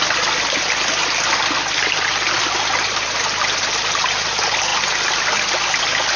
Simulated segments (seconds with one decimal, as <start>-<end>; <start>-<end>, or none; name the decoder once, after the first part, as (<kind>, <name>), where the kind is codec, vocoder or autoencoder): none